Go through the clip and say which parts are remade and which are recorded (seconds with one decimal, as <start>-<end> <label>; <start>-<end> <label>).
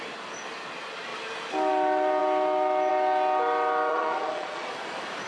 0.0-3.9 recorded; 3.9-4.7 remade; 4.7-5.3 recorded